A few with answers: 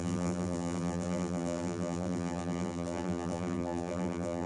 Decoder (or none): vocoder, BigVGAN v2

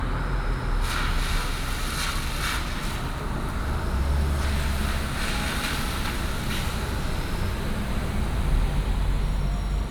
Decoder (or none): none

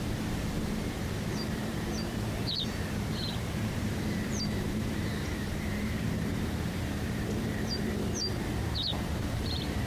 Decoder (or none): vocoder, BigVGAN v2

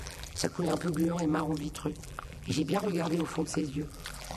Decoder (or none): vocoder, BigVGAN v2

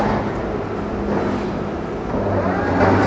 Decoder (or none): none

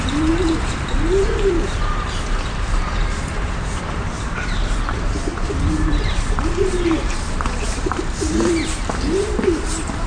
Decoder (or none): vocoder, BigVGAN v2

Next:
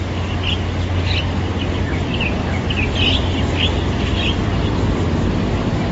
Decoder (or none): none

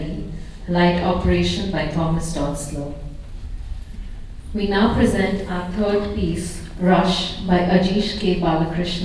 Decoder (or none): none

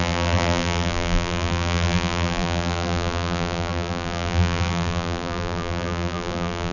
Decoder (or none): vocoder, BigVGAN v2